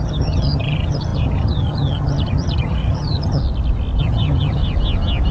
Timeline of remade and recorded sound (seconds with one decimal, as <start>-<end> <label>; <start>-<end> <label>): 0.0-3.4 remade; 3.4-4.0 recorded; 4.0-4.6 remade; 4.6-5.3 recorded